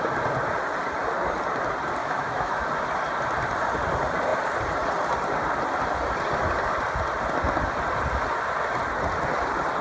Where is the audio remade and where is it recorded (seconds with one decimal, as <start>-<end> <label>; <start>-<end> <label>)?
0.0-2.0 recorded; 2.0-2.7 remade; 2.7-9.8 recorded